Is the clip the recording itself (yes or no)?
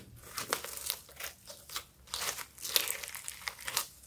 yes